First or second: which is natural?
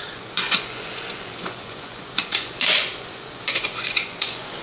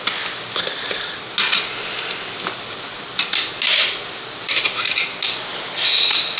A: second